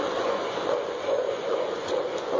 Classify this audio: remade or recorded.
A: remade